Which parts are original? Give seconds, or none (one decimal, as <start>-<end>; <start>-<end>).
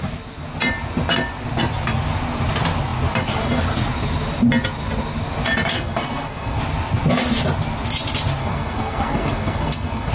0.0-5.7; 6.6-8.4